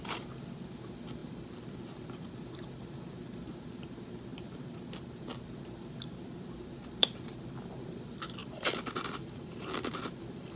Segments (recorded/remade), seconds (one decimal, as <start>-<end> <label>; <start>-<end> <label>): 0.0-4.3 recorded; 4.3-4.9 remade; 4.9-8.4 recorded; 8.4-10.6 remade